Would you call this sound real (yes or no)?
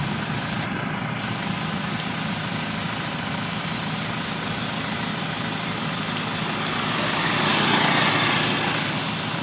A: yes